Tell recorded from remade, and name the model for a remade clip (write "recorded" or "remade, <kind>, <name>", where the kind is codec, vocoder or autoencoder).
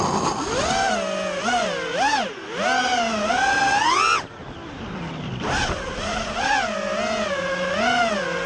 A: recorded